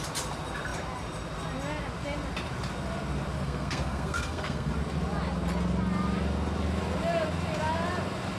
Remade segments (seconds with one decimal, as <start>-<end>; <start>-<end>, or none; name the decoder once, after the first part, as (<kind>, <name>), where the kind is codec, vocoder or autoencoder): 3.4-4.7 (codec, SNAC)